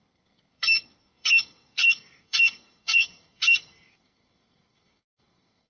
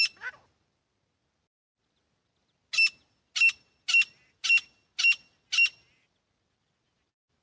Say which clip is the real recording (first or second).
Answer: second